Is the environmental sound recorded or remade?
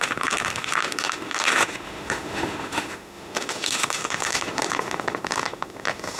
remade